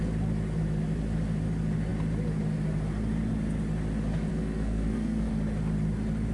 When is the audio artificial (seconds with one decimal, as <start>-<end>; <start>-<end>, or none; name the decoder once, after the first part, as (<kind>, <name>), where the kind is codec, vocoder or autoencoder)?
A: 4.3-5.3 (codec, SNAC)